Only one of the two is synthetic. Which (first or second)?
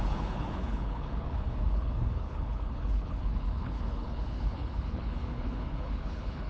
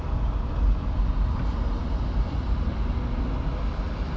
first